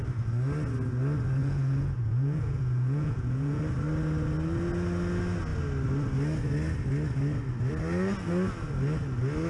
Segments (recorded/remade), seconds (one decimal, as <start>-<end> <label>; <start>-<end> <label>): 0.0-1.4 recorded; 1.4-3.6 remade; 3.6-9.5 recorded